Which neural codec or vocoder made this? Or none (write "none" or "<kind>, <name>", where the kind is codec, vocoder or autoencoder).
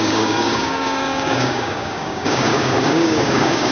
codec, DAC